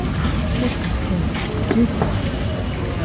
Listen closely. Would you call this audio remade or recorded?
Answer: recorded